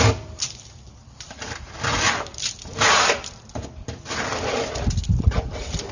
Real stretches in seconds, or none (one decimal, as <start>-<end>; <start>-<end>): none